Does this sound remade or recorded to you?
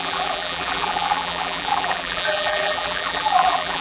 remade